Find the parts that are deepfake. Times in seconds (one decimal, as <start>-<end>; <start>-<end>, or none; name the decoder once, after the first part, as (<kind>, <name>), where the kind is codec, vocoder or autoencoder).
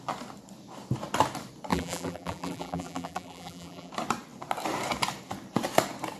1.7-3.9 (vocoder, BigVGAN v2)